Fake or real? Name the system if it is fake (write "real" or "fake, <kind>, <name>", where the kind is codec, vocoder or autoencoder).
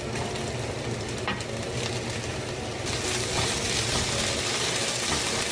real